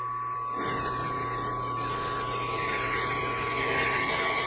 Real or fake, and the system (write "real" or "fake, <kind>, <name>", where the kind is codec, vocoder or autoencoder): real